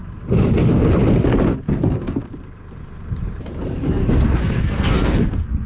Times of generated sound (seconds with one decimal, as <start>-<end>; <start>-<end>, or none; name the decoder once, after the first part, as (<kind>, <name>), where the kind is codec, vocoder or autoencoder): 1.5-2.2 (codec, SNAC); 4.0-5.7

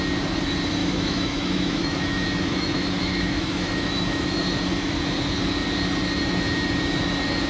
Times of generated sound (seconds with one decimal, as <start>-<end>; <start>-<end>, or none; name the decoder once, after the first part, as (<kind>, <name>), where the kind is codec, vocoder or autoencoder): 0.8-4.4 (autoencoder, DAC-VAE)

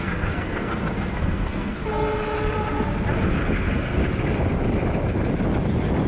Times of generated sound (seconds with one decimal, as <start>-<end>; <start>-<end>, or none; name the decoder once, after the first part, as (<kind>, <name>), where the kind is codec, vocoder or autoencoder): 0.0-1.8 (codec, SNAC); 3.3-4.0

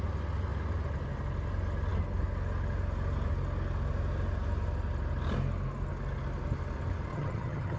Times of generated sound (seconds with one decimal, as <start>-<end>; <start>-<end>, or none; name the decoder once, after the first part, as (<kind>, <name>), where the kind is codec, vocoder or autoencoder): 7.1-7.8 (vocoder, HiFi-GAN)

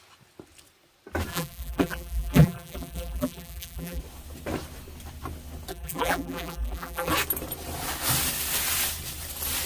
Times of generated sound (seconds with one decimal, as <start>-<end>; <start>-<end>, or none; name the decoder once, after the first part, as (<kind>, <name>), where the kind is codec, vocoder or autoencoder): 1.3-4.0 (vocoder, BigVGAN v2); 5.7-7.1

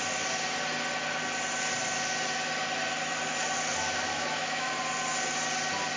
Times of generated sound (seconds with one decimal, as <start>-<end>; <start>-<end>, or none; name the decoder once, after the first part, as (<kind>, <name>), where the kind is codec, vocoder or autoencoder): 4.1-4.7 (autoencoder, DAC-VAE)

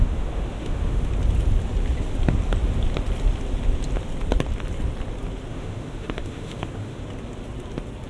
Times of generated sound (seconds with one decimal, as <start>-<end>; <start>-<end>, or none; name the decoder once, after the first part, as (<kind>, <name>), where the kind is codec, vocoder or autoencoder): 0.0-1.1 (autoencoder, DAC-VAE); 5.5-7.0